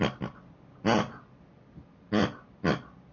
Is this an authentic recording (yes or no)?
yes